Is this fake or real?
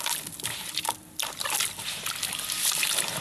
real